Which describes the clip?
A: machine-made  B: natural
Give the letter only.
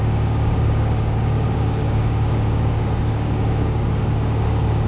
A